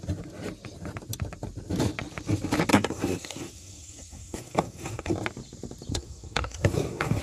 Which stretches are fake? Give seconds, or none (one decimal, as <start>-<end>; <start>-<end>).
2.7-5.1; 5.9-7.2